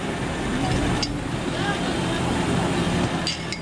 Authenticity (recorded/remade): recorded